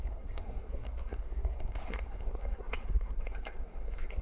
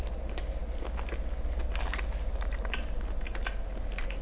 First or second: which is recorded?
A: second